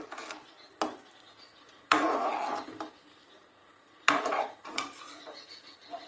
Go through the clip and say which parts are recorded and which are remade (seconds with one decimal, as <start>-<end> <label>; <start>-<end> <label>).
0.0-1.7 recorded; 1.7-2.3 remade; 2.3-3.6 recorded; 3.6-6.1 remade